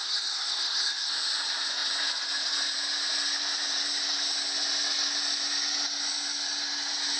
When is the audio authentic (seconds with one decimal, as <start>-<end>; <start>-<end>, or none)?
1.1-7.2